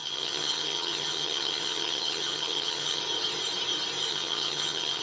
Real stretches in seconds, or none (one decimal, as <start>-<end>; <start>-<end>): 3.0-4.1